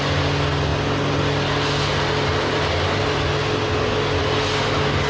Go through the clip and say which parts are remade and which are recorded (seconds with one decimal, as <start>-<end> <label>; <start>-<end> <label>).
0.0-5.1 recorded